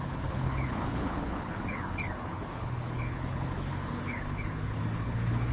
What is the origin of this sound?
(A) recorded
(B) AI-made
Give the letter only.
B